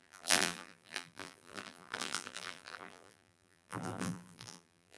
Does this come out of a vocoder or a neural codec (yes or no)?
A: yes